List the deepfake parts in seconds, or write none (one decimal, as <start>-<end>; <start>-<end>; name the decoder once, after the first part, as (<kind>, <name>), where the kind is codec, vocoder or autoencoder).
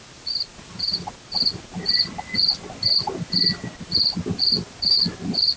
none